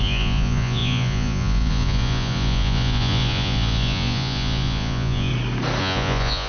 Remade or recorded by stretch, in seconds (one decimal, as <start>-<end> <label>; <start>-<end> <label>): 0.0-5.3 remade; 5.3-5.8 recorded; 5.8-6.5 remade